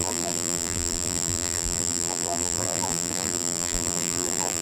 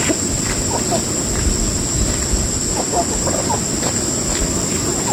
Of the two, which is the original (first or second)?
second